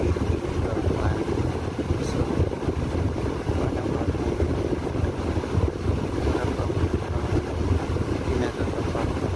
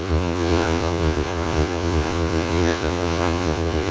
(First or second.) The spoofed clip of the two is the second